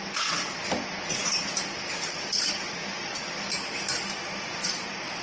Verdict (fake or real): real